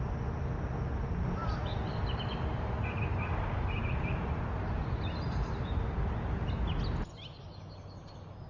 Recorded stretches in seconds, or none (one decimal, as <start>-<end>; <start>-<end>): 0.0-8.5